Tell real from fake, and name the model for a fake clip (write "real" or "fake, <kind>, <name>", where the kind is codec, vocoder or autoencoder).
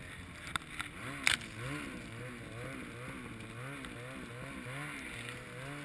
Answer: real